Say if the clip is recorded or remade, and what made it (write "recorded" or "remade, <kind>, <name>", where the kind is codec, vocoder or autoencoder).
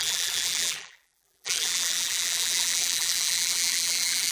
remade, vocoder, BigVGAN v2